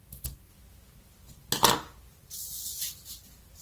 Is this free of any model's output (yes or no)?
yes